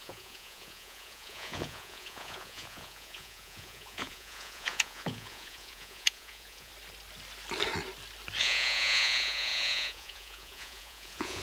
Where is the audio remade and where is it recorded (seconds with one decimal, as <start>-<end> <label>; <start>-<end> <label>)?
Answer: 0.0-6.7 remade; 6.7-8.4 recorded; 8.4-11.4 remade